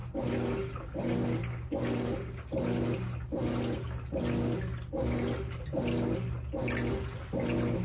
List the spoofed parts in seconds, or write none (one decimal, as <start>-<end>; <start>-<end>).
none